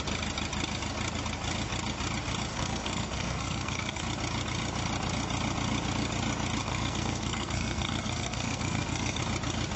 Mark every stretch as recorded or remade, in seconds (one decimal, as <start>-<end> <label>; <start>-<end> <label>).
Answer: 0.0-2.5 recorded; 2.5-4.0 remade; 4.0-6.6 recorded; 6.6-9.2 remade; 9.2-9.8 recorded